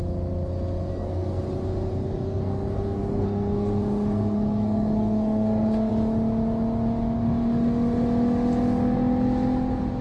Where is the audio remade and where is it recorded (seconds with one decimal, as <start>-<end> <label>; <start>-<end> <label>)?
0.0-0.9 recorded; 0.9-1.4 remade; 1.4-1.9 recorded; 1.9-5.9 remade; 5.9-10.0 recorded